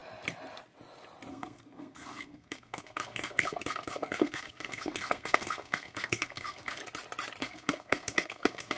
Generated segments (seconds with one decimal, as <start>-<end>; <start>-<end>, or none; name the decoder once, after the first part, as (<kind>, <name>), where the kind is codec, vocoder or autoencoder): 1.3-6.8 (codec, SNAC); 7.4-8.8